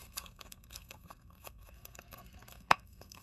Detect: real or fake fake